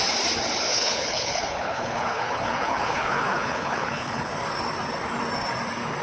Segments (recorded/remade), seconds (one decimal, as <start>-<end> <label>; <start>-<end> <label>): 0.0-0.7 recorded; 0.7-4.3 remade; 4.3-6.0 recorded